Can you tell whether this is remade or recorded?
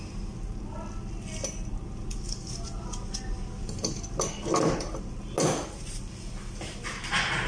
recorded